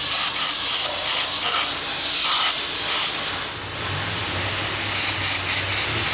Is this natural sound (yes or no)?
yes